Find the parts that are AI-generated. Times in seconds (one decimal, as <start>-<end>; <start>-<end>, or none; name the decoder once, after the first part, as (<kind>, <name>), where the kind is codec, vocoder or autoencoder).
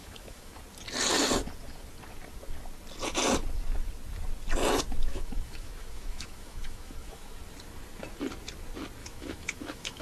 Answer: 0.0-0.6 (autoencoder, DAC-VAE); 5.1-7.3; 9.0-10.0